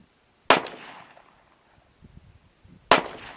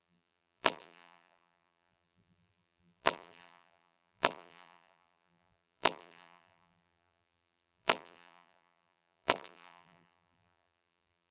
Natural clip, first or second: first